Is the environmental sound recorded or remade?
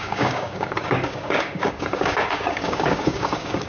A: remade